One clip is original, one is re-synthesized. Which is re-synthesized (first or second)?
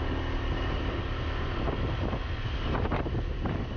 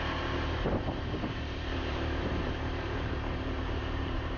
second